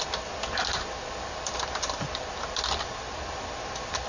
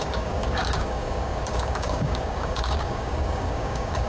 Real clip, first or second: first